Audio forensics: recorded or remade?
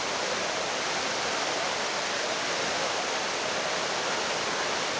remade